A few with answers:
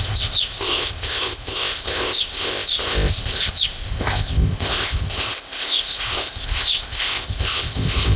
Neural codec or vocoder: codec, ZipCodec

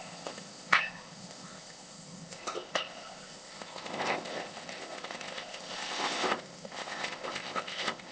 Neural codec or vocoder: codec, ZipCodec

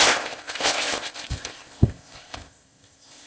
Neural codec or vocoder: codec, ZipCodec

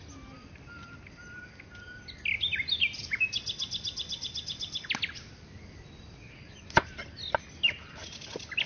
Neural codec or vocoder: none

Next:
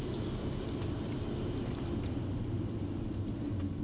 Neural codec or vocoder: none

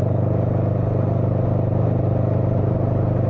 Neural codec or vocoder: none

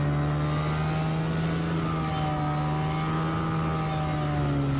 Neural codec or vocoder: none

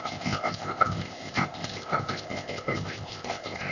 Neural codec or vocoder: codec, ZipCodec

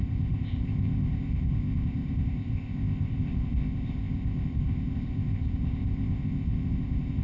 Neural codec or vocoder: codec, ZipCodec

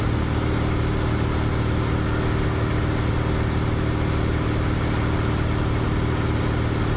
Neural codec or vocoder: none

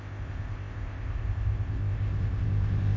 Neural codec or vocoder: codec, ZipCodec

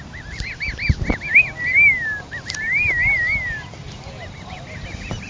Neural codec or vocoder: none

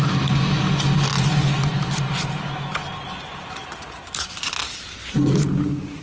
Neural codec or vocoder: none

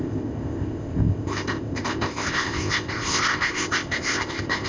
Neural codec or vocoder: codec, ZipCodec